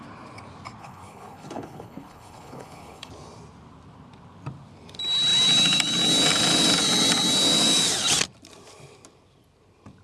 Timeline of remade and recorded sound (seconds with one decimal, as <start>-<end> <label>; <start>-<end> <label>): 0.0-0.8 recorded; 0.8-3.1 remade; 3.1-10.0 recorded